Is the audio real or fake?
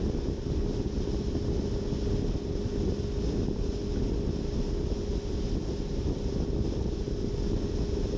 real